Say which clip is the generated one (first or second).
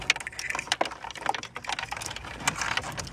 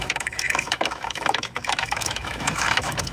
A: second